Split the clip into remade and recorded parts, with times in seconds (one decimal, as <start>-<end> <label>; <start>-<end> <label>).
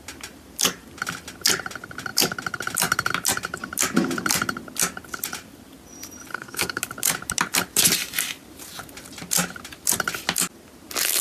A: 0.0-6.3 recorded; 6.3-6.8 remade; 6.8-11.2 recorded